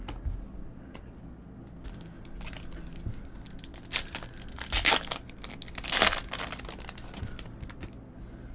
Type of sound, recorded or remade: recorded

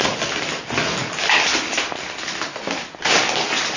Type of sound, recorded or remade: recorded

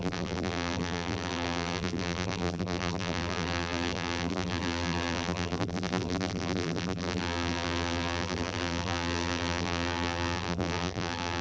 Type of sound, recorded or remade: remade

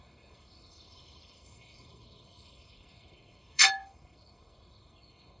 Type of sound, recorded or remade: remade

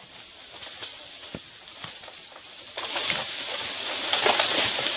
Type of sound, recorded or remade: recorded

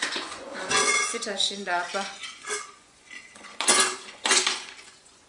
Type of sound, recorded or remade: remade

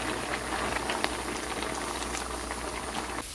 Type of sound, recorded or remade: recorded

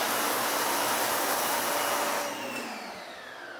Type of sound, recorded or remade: recorded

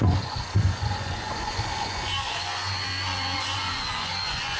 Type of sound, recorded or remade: remade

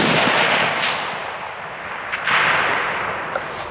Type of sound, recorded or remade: recorded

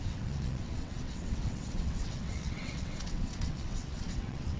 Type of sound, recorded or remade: remade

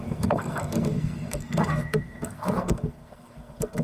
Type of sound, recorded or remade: remade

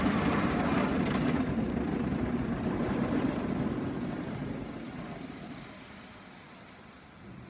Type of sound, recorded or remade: recorded